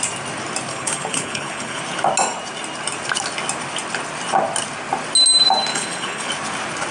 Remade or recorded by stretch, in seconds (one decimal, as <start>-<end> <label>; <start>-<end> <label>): 0.0-0.7 recorded; 0.7-1.8 remade; 1.8-5.7 recorded; 5.7-6.3 remade; 6.3-6.9 recorded